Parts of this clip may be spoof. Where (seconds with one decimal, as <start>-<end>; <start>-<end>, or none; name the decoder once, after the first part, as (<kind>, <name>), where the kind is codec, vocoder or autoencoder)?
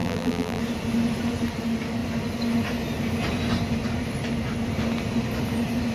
0.0-0.6 (vocoder, BigVGAN v2)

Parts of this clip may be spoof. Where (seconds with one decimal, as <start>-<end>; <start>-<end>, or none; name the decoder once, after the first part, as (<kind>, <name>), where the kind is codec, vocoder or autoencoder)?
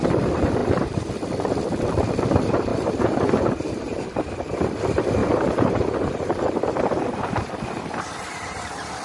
0.6-1.1 (vocoder, BigVGAN v2); 2.7-4.0; 5.2-6.6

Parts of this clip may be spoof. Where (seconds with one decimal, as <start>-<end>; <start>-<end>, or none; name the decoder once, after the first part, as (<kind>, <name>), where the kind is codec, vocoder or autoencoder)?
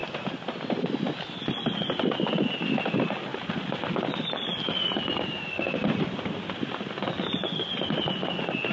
none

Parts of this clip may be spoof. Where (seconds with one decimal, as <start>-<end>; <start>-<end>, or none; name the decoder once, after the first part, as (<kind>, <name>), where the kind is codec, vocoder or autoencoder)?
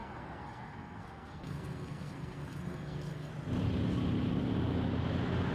0.0-3.3 (codec, SNAC)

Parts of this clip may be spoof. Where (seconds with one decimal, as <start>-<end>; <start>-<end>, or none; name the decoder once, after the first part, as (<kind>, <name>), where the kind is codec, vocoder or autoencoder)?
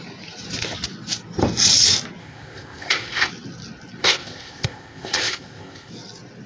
2.2-3.3 (codec, ZipCodec); 4.0-5.9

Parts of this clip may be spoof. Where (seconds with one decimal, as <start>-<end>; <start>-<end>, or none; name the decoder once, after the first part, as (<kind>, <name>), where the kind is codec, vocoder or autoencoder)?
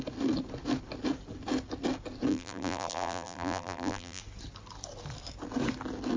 2.3-4.2 (vocoder, BigVGAN v2)